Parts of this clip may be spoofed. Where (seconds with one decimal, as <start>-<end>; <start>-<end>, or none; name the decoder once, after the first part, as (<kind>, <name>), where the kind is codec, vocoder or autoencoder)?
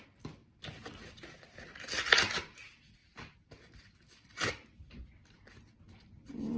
3.0-3.8 (vocoder, BigVGAN v2); 4.3-5.0